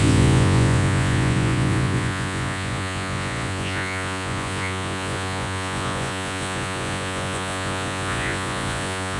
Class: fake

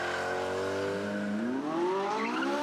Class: real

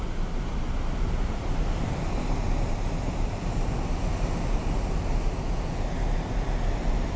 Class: real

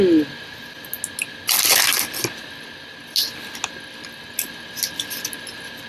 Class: real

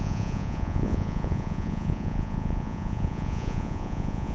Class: fake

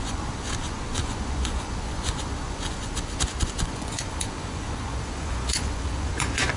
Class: fake